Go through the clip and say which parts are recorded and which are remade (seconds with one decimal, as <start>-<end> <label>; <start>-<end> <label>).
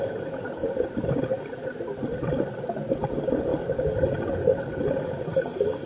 0.0-5.9 recorded